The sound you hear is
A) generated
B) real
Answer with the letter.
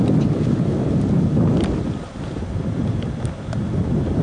B